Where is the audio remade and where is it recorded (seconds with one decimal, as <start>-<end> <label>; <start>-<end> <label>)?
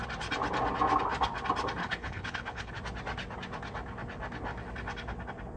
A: 0.0-1.8 recorded; 1.8-2.7 remade; 2.7-5.6 recorded